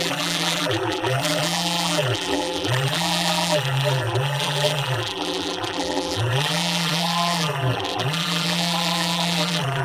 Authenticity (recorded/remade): remade